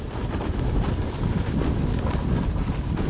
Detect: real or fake real